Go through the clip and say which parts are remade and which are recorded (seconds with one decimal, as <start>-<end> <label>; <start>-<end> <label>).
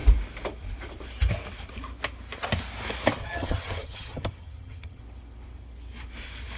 0.0-3.2 recorded; 3.2-5.0 remade; 5.0-6.6 recorded